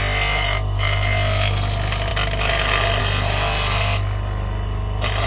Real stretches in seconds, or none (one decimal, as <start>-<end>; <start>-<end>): 0.0-5.3

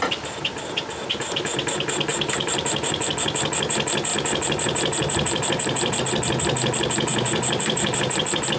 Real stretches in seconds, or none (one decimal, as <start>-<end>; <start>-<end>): 0.0-2.1; 3.1-4.1; 6.0-7.1; 8.2-8.6